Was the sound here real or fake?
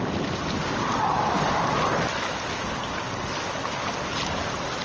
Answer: real